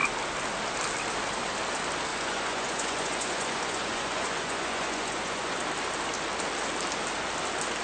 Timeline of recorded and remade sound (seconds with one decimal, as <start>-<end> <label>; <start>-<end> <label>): 0.0-2.1 recorded; 2.1-5.6 remade; 5.6-7.8 recorded